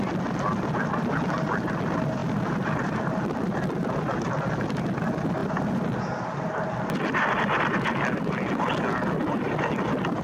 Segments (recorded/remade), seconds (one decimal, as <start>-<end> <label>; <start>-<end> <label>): 0.0-10.2 recorded